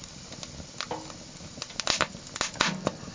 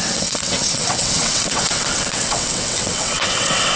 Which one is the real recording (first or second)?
first